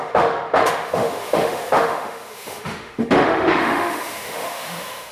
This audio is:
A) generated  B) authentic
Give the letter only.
A